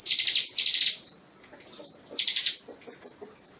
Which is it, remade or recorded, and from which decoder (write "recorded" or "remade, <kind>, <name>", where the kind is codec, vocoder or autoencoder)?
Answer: recorded